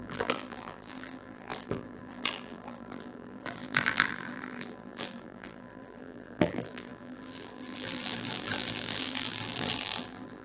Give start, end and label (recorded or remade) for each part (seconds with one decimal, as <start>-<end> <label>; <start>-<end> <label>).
0.0-10.4 remade